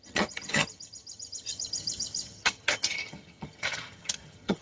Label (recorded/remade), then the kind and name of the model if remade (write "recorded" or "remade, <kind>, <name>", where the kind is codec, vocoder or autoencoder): remade, vocoder, HiFi-GAN